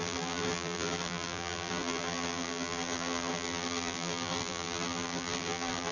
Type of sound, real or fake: fake